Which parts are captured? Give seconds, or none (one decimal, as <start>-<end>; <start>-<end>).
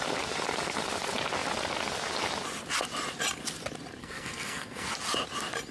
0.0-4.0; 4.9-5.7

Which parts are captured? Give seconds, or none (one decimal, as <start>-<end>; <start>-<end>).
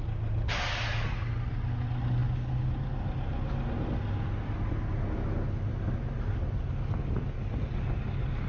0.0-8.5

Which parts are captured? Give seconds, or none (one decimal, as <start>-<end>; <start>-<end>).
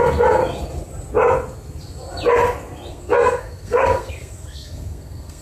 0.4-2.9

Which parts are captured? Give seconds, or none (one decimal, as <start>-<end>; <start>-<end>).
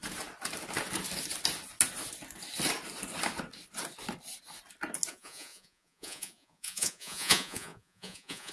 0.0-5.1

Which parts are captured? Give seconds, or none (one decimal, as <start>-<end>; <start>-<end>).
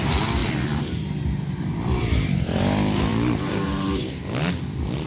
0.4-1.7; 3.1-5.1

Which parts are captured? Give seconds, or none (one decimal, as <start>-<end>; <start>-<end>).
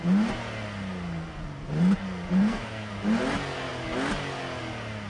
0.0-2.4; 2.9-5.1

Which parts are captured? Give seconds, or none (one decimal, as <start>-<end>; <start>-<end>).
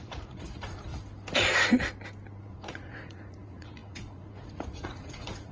0.9-2.4